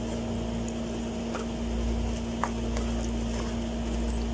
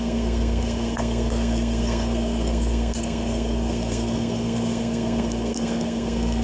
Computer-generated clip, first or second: second